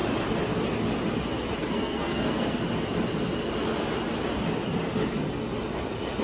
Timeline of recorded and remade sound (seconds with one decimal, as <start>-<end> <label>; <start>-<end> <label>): 0.0-1.6 recorded; 1.6-2.6 remade; 2.6-6.2 recorded